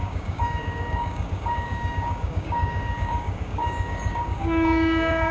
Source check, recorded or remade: remade